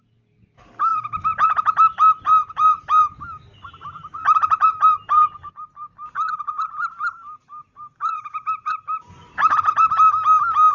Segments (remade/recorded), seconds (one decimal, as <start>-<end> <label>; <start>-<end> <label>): 0.0-0.9 recorded; 0.9-1.4 remade; 1.4-4.4 recorded; 4.4-9.0 remade; 9.0-10.7 recorded